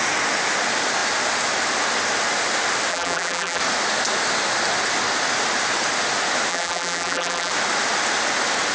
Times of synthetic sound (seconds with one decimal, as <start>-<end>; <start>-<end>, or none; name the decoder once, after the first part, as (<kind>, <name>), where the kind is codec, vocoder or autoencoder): 2.9-3.6 (vocoder, BigVGAN v2); 6.5-7.5